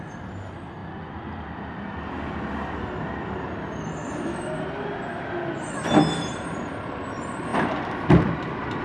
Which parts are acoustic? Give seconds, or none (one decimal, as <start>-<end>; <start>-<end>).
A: 0.0-8.8